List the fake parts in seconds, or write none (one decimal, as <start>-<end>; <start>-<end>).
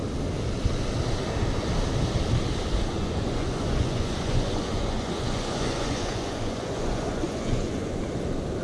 2.9-8.0